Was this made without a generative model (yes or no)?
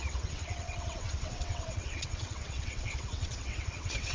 no